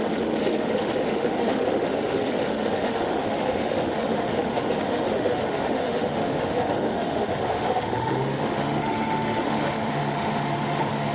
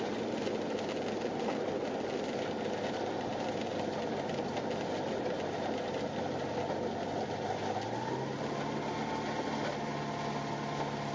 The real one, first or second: second